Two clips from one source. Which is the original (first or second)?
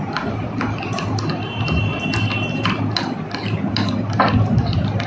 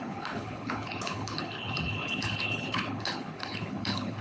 first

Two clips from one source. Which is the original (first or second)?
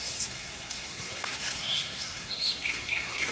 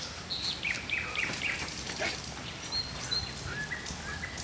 second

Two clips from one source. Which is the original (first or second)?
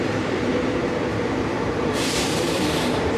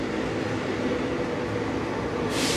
second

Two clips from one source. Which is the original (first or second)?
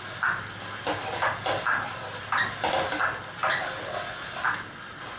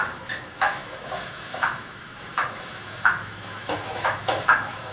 first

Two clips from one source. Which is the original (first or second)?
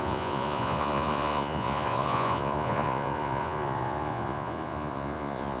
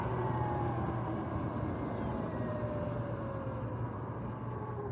second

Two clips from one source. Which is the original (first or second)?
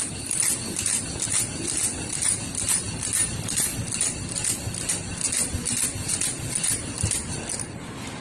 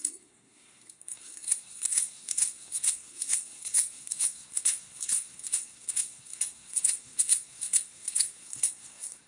first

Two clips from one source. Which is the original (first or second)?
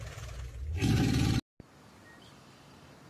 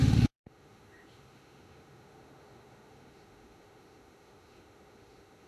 first